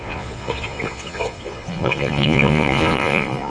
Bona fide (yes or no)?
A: no